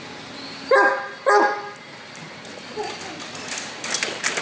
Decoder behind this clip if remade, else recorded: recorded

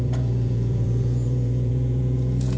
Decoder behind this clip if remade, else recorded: remade, vocoder, Vocos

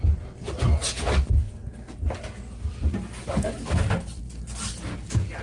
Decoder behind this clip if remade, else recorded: recorded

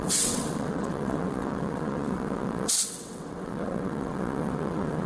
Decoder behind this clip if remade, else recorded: remade, vocoder, WaveNeXt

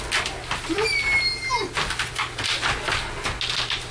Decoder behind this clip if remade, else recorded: recorded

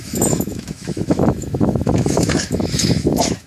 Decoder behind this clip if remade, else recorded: remade, autoencoder, DAC-VAE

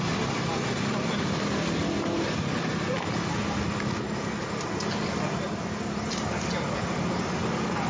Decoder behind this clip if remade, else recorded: recorded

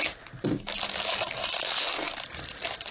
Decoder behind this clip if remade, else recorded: recorded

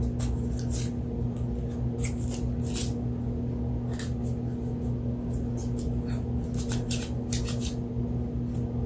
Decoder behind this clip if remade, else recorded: recorded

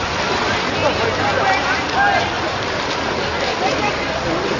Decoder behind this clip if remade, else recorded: recorded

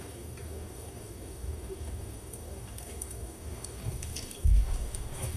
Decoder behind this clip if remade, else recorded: remade, codec, DAC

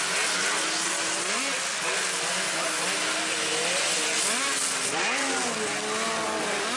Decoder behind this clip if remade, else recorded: recorded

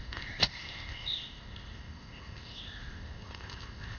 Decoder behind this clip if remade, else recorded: remade, codec, ZipCodec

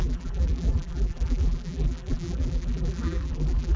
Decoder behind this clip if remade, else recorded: remade, vocoder, BigVGAN v2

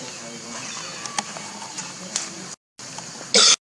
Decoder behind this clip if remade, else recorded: recorded